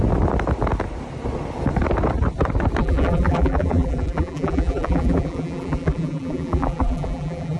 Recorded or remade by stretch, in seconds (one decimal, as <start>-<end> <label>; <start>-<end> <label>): 0.0-2.8 recorded; 2.8-7.6 remade